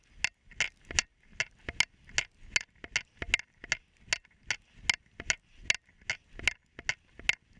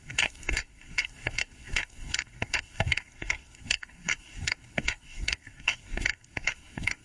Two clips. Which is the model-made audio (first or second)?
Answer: second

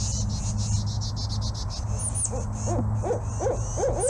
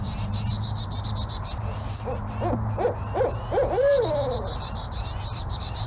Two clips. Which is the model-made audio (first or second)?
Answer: second